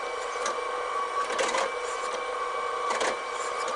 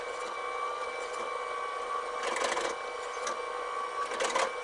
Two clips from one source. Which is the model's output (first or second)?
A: first